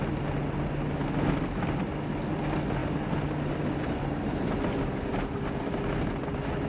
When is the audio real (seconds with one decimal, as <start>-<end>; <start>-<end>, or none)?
0.0-6.7